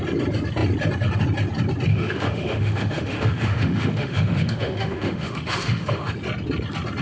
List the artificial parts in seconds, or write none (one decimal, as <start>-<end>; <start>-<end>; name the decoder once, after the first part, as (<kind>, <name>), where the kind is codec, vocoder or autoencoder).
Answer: 1.9-6.1 (autoencoder, DAC-VAE)